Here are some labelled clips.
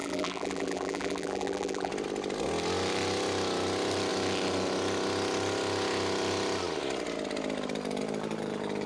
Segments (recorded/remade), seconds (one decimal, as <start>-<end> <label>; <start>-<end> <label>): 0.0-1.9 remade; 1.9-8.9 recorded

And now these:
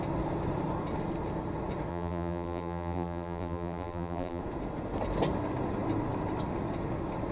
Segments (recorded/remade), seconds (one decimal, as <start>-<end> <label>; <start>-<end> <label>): 0.0-1.9 recorded; 1.9-4.4 remade; 4.4-7.3 recorded

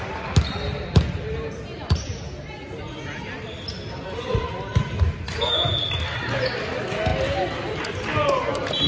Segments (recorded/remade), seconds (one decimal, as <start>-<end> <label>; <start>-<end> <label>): 0.0-8.9 recorded

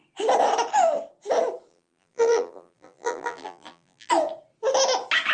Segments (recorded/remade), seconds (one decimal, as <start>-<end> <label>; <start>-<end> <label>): 0.0-1.7 recorded; 1.7-4.1 remade; 4.1-5.3 recorded

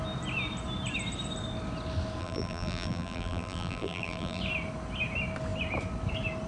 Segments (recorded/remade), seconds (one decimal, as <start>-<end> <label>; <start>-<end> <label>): 0.0-2.2 recorded; 2.2-4.4 remade; 4.4-6.5 recorded

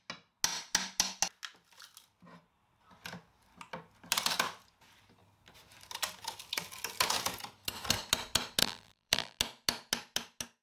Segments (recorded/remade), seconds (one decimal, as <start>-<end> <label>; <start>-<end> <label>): 0.0-8.6 recorded; 8.6-9.4 remade; 9.4-10.6 recorded

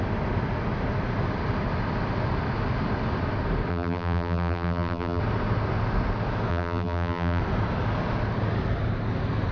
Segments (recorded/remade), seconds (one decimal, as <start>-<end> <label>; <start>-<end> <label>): 0.0-3.7 recorded; 3.7-5.2 remade; 5.2-6.5 recorded; 6.5-7.4 remade; 7.4-9.5 recorded

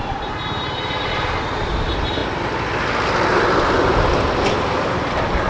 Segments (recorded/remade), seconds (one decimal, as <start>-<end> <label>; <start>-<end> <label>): 0.0-2.2 remade; 2.2-5.5 recorded